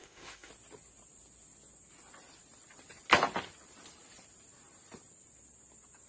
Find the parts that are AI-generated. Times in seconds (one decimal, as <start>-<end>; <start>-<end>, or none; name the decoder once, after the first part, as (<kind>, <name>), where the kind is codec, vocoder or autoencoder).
0.0-0.5 (autoencoder, DAC-VAE)